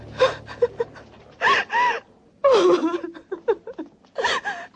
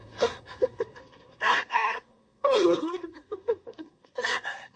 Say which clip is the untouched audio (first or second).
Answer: first